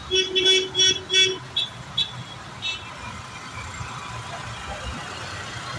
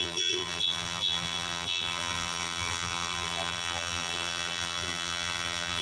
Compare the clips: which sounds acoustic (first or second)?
first